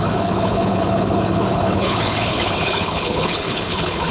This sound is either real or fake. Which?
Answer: fake